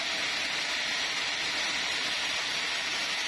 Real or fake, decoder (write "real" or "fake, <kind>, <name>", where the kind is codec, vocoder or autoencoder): real